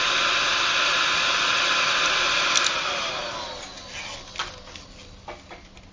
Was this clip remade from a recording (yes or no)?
no